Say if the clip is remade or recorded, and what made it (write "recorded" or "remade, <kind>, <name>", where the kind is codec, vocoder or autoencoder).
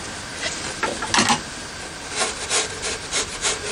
recorded